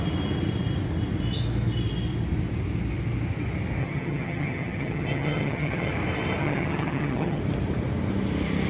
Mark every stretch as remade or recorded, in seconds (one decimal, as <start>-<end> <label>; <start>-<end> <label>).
0.0-3.8 recorded; 3.8-5.9 remade; 5.9-6.4 recorded; 6.4-7.4 remade; 7.4-8.7 recorded